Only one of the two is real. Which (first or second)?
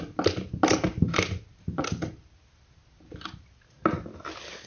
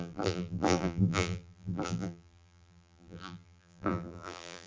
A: first